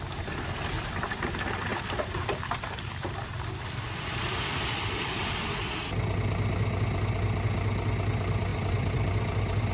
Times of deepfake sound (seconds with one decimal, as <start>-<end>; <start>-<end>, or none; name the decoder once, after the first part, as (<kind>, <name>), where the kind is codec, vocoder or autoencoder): 1.7-5.5 (vocoder, BigVGAN v2); 8.5-9.7